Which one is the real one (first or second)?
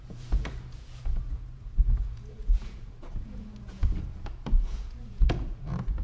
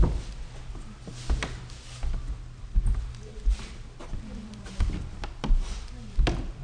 second